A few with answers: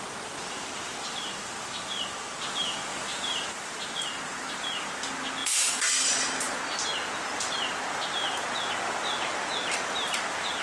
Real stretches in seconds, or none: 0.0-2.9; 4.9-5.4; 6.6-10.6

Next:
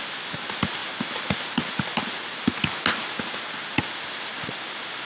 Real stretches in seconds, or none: 0.0-5.0

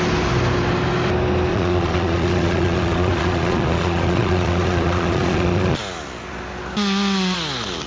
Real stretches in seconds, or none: 0.0-1.5; 5.8-7.9

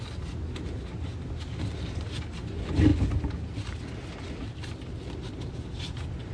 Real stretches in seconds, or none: 0.0-6.3